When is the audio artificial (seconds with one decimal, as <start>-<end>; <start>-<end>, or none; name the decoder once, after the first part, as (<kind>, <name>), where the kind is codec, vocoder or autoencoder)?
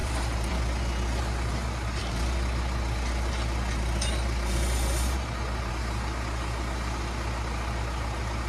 0.0-0.6 (vocoder, BigVGAN v2)